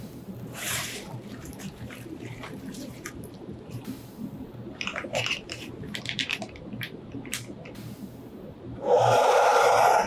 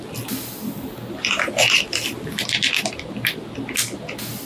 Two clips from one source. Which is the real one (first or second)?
second